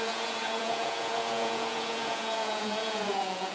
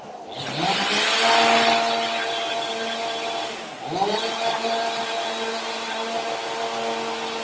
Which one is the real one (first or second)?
second